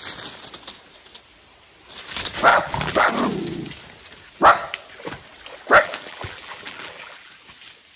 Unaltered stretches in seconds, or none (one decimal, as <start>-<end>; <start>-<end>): 0.0-2.5; 3.1-5.8; 7.3-8.0